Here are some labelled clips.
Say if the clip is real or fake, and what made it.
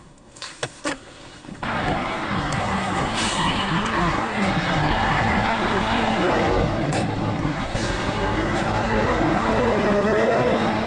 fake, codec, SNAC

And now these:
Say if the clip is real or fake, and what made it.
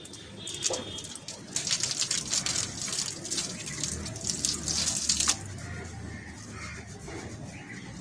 real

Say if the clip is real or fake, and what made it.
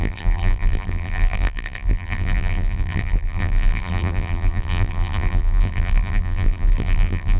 fake, vocoder, BigVGAN v2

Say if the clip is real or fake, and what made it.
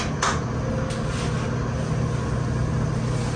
real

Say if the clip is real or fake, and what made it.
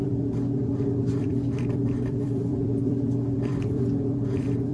fake, vocoder, BigVGAN v2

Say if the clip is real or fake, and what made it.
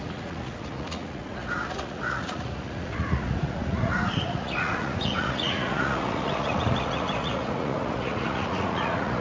fake, vocoder, Vocos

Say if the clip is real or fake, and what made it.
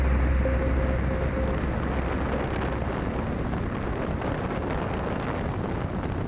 real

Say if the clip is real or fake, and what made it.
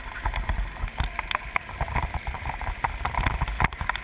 real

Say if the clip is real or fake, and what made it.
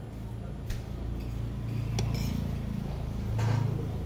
real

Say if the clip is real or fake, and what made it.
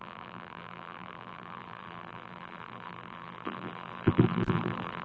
fake, vocoder, BigVGAN v2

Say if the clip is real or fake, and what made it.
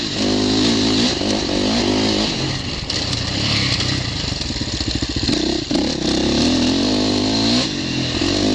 real